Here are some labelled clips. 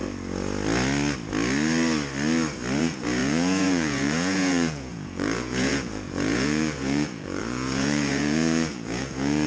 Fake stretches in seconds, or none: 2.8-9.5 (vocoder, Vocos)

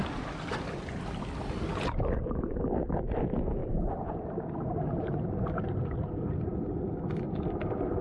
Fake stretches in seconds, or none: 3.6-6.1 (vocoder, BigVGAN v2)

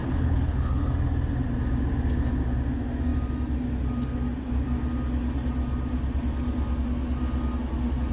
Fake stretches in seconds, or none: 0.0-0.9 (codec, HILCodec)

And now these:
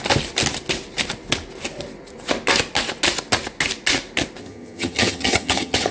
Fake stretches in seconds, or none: 4.4-5.9 (vocoder, HiFi-GAN)

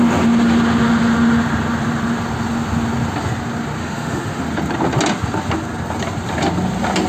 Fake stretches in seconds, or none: 3.8-4.4 (autoencoder, DAC-VAE)

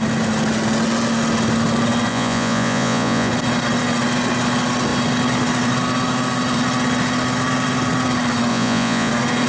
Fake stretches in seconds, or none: 2.1-3.3 (vocoder, Vocos); 8.5-9.1

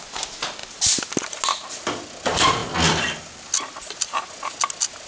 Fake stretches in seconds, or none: none

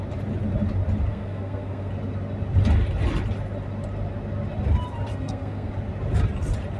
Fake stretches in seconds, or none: 1.1-1.9 (codec, SNAC); 5.1-5.7